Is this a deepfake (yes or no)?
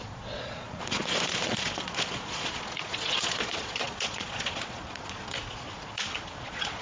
yes